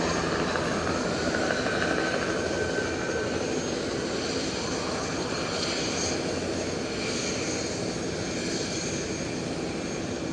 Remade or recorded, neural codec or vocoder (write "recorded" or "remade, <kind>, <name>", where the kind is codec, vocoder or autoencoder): recorded